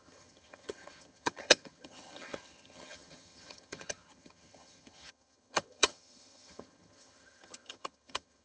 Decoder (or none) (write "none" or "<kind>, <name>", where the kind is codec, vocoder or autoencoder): vocoder, HiFi-GAN